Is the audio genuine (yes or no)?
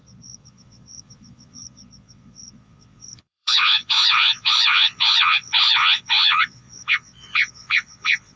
no